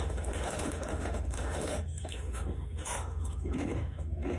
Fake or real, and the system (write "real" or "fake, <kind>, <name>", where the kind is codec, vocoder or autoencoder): fake, autoencoder, DAC-VAE